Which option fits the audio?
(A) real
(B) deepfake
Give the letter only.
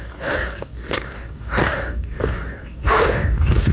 B